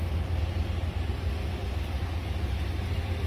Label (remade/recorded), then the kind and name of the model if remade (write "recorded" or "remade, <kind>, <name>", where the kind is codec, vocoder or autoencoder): recorded